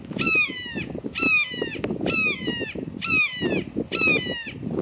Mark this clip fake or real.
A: real